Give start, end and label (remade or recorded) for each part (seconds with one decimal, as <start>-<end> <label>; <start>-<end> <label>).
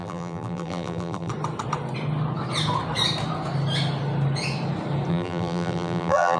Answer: 0.0-1.3 remade; 1.3-5.1 recorded; 5.1-6.4 remade